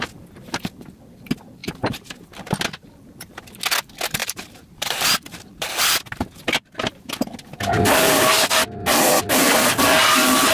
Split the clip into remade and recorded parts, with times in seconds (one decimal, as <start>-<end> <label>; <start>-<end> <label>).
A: 0.0-1.6 recorded; 1.6-2.2 remade; 2.2-4.2 recorded; 4.2-5.0 remade; 5.0-10.5 recorded